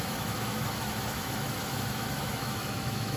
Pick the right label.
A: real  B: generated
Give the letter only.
B